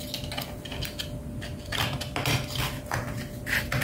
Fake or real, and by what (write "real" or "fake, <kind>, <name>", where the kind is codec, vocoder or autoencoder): real